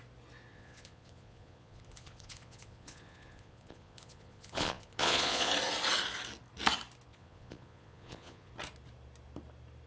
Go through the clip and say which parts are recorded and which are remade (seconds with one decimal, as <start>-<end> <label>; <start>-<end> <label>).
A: 0.0-0.5 recorded; 0.5-5.5 remade; 5.5-7.1 recorded; 7.1-8.5 remade; 8.5-9.9 recorded

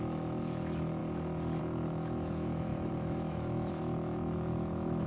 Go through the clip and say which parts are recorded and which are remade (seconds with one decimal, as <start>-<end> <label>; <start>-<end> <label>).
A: 0.0-1.0 remade; 1.0-1.6 recorded; 1.6-5.1 remade

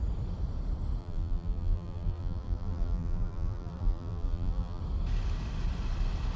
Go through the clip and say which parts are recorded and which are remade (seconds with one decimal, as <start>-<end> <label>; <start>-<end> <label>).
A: 0.0-1.0 recorded; 1.0-4.8 remade; 4.8-6.4 recorded

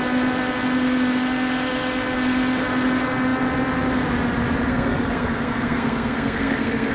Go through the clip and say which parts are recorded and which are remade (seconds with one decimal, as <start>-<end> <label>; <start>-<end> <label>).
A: 0.0-4.7 recorded; 4.7-6.9 remade

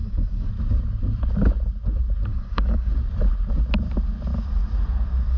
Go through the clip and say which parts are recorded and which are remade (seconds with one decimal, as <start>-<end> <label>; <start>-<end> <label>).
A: 0.0-0.5 remade; 0.5-2.3 recorded; 2.3-2.9 remade; 2.9-5.4 recorded

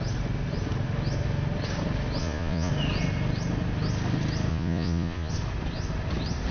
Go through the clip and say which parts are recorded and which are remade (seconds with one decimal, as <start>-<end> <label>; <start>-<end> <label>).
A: 0.0-2.2 recorded; 2.2-2.7 remade; 2.7-4.5 recorded; 4.5-5.3 remade; 5.3-6.5 recorded

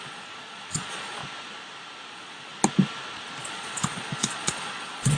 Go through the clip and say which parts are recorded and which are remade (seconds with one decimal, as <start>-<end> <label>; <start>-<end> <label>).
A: 0.0-1.2 remade; 1.2-2.1 recorded; 2.1-2.5 remade; 2.5-3.4 recorded; 3.4-5.2 remade

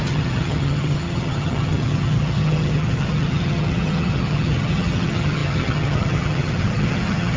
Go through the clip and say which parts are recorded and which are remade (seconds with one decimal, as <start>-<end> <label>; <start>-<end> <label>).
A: 0.0-7.4 remade